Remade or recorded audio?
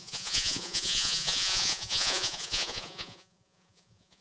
remade